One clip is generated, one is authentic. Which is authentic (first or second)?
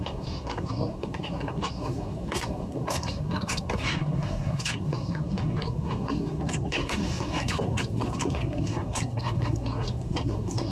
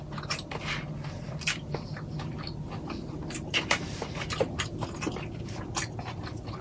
second